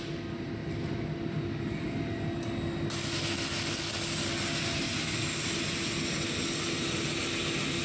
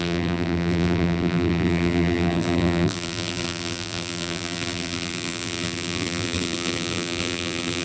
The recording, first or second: first